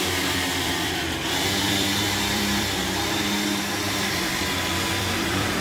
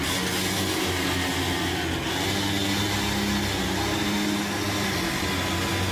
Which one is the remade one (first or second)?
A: first